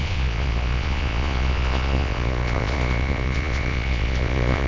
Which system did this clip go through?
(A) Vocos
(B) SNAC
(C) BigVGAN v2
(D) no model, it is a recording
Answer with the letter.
A